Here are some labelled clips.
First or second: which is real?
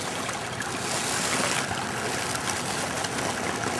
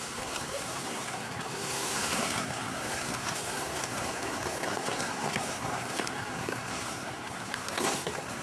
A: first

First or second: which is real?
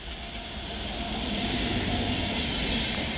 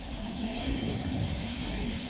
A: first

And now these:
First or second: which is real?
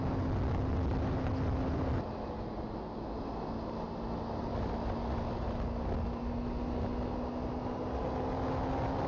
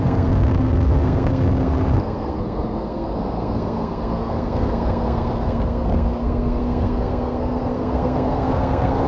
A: first